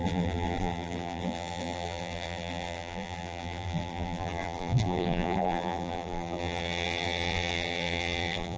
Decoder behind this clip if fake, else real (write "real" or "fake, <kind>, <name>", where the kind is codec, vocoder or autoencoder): fake, vocoder, BigVGAN v2